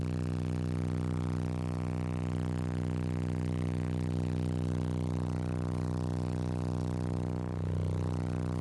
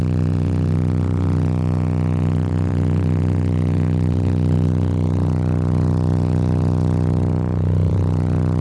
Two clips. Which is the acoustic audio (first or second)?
first